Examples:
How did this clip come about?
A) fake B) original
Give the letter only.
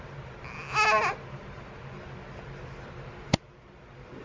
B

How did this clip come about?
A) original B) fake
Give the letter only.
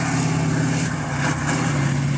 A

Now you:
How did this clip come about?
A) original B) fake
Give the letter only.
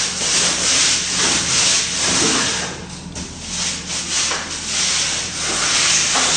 A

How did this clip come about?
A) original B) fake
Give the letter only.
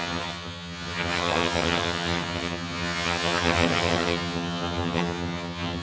B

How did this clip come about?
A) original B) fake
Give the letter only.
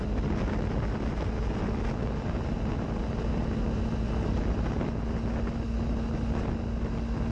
A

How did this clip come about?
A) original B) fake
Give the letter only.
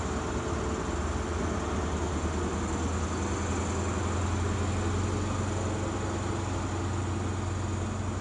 A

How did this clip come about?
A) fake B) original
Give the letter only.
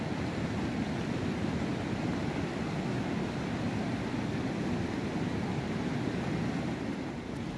B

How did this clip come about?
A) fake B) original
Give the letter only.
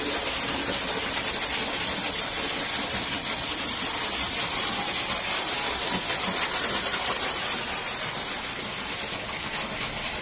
A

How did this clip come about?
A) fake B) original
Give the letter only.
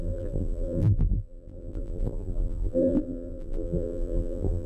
A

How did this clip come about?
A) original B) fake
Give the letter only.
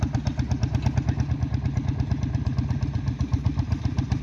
A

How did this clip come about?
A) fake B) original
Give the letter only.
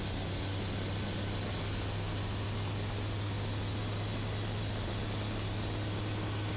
B